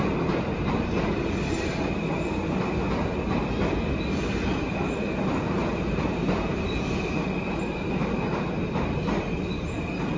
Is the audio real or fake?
real